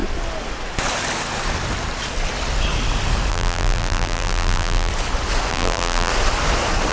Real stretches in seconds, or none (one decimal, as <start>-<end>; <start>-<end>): 0.0-3.3; 4.9-5.5; 6.1-6.9